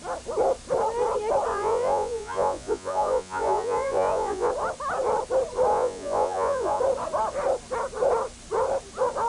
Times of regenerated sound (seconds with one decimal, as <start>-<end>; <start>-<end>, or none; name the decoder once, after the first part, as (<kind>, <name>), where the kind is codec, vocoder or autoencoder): 1.5-4.5 (vocoder, Vocos); 5.7-6.8